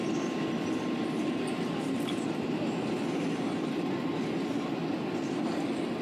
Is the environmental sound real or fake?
real